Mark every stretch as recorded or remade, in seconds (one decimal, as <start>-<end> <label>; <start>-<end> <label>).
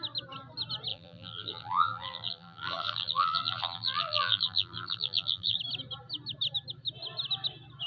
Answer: 0.0-0.9 recorded; 0.9-5.6 remade; 5.6-7.9 recorded